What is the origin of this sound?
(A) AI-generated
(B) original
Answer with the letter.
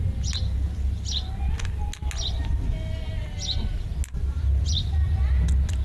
B